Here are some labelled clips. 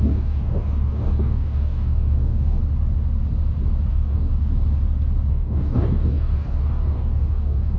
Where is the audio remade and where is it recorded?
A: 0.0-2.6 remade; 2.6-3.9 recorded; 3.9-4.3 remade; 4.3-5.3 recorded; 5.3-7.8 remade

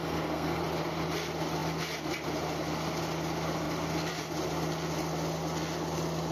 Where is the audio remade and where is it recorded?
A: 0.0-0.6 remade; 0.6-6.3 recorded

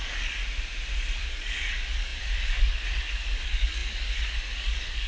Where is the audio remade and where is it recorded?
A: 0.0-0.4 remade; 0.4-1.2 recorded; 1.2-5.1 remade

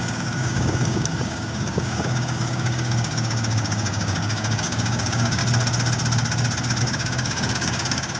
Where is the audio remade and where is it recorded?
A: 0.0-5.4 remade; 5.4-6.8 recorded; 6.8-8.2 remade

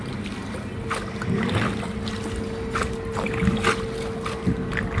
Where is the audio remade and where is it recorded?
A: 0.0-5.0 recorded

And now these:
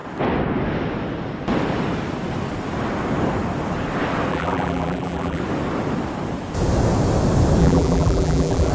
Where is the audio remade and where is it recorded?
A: 0.0-4.3 recorded; 4.3-5.4 remade; 5.4-7.6 recorded; 7.6-8.7 remade